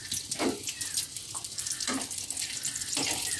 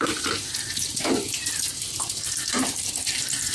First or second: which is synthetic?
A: second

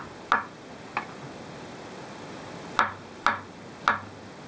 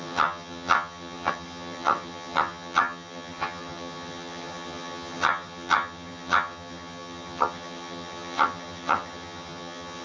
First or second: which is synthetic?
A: second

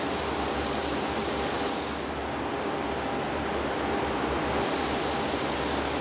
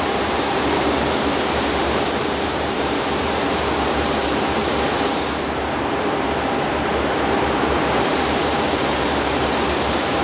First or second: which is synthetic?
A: second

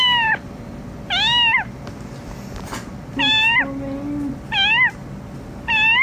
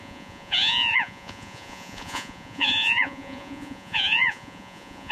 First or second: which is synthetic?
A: second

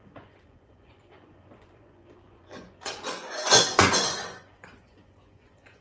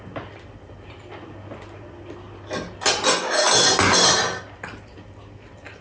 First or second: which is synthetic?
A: first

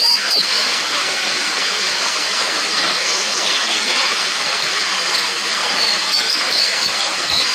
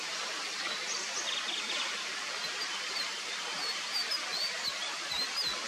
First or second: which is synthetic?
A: first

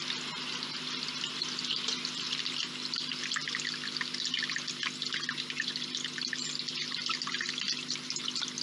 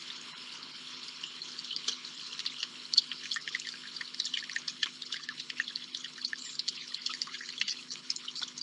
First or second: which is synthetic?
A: second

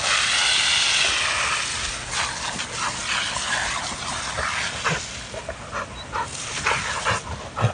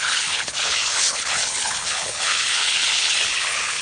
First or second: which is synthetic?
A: second